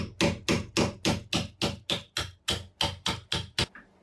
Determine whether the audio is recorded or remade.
recorded